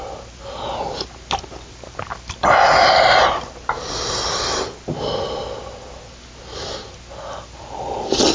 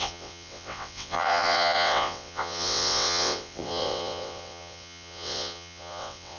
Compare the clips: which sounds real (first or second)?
first